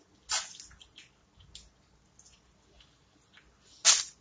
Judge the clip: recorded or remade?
recorded